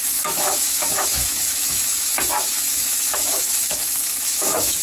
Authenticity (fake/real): fake